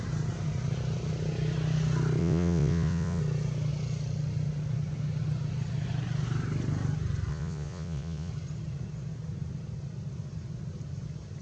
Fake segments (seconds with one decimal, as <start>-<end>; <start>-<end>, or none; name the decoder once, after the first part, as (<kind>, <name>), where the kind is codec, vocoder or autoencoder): 2.2-3.2 (vocoder, Vocos); 7.3-8.3